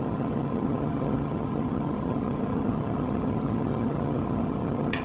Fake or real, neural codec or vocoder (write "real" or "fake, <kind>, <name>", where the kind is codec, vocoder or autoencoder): fake, vocoder, HiFi-GAN